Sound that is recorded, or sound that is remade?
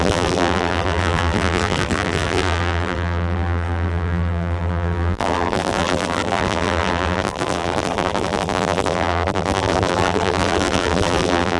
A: remade